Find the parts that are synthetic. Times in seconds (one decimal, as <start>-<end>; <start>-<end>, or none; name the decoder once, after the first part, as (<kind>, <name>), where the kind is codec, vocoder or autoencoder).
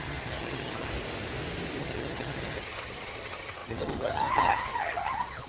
0.0-0.9 (vocoder, HiFi-GAN); 1.8-5.5